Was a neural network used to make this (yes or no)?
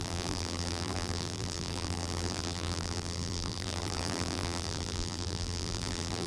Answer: yes